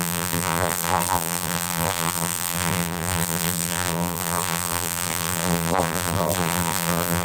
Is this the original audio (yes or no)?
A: no